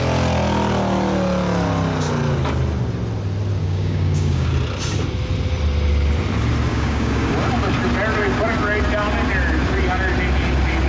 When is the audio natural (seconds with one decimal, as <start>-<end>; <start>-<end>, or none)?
0.0-3.6; 4.5-6.7; 7.3-10.9